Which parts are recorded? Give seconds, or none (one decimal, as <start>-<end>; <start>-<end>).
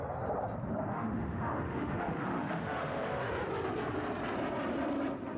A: 0.0-0.9; 3.3-5.4